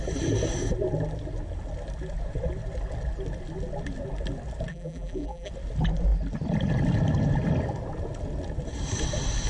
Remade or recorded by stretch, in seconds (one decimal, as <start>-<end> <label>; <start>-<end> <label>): 0.0-4.7 recorded; 4.7-5.5 remade; 5.5-9.5 recorded